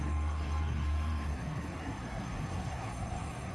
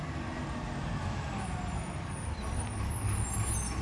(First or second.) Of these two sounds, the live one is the second